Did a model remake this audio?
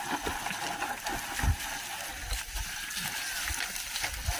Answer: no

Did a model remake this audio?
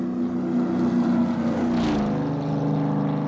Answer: no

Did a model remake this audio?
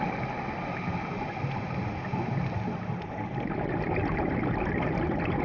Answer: no